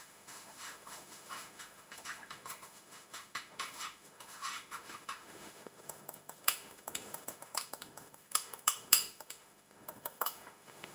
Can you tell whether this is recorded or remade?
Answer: remade